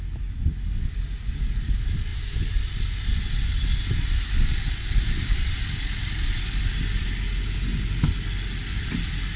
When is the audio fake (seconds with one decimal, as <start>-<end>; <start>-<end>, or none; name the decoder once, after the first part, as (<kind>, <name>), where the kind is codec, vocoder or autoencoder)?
none